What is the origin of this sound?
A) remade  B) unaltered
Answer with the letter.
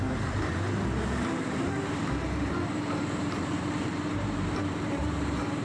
A